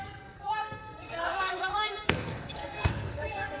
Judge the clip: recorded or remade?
remade